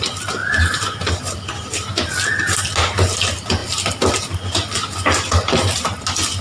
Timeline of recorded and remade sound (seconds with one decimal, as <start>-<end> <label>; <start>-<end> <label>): 0.0-6.4 recorded